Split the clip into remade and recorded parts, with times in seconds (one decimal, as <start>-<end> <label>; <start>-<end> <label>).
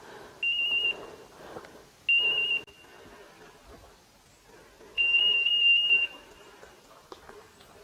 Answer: 0.0-5.5 recorded; 5.5-7.8 remade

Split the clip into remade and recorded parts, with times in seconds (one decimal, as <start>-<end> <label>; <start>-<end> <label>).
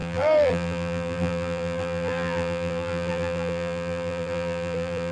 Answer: 0.0-5.1 remade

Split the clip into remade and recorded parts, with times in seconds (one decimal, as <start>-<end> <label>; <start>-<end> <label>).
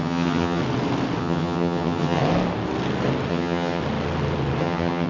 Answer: 0.0-0.6 remade; 0.6-1.2 recorded; 1.2-2.2 remade; 2.2-3.3 recorded; 3.3-3.8 remade; 3.8-4.6 recorded; 4.6-5.1 remade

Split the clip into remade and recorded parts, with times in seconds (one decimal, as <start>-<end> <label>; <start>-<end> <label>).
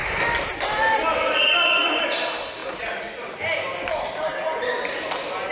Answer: 0.0-5.5 recorded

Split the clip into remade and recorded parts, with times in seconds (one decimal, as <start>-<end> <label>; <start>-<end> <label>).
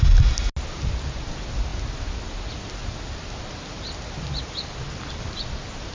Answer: 0.0-5.9 recorded